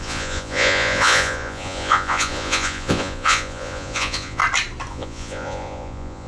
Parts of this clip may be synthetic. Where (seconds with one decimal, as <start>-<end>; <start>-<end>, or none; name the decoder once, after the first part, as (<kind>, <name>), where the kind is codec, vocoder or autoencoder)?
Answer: 0.0-4.4 (vocoder, Vocos); 4.9-6.3